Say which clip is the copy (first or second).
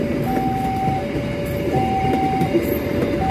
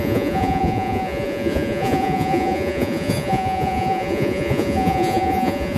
second